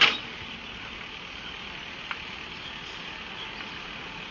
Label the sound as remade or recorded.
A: remade